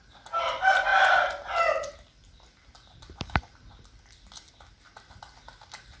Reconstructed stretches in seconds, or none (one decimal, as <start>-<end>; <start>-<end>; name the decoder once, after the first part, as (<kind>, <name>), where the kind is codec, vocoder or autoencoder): none